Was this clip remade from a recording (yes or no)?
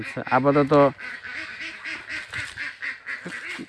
no